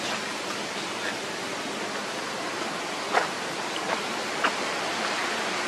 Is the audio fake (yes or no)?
no